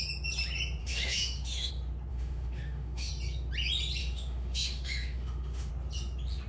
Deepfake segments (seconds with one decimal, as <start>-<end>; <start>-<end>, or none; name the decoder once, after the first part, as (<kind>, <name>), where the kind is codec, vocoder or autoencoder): 0.8-1.7 (autoencoder, DAC-VAE); 2.1-3.1; 4.0-5.7